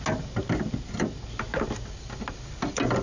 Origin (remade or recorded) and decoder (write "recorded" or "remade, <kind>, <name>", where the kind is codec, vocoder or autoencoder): recorded